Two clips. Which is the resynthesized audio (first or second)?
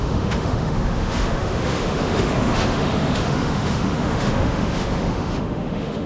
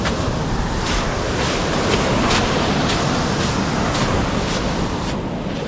first